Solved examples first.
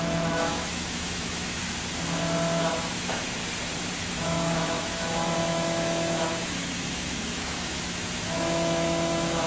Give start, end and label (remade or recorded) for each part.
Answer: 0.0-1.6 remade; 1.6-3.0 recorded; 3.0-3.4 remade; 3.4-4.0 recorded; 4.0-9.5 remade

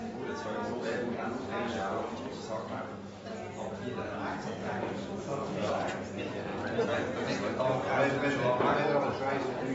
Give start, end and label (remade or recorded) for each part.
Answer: 0.0-4.6 recorded; 4.6-5.7 remade; 5.7-9.7 recorded

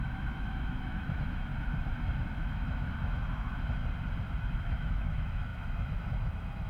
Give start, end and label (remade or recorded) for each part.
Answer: 0.0-1.5 remade; 1.5-2.4 recorded; 2.4-3.8 remade; 3.8-4.5 recorded; 4.5-6.7 remade

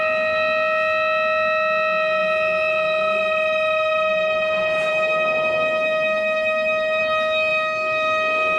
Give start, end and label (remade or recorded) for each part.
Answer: 0.0-4.9 recorded; 4.9-7.0 remade; 7.0-7.5 recorded; 7.5-8.6 remade

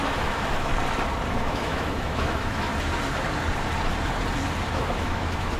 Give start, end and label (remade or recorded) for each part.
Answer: 0.0-0.7 remade; 0.7-1.3 recorded; 1.3-2.7 remade; 2.7-4.7 recorded; 4.7-5.6 remade

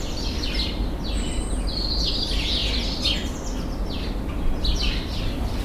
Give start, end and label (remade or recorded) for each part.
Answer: 0.0-5.6 recorded